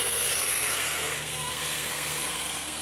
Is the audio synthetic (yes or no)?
yes